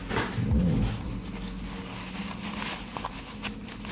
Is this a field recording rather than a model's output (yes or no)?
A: yes